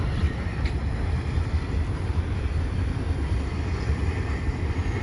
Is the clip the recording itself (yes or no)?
no